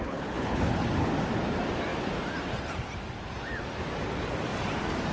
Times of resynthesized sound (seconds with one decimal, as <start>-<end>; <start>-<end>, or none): 0.0-1.1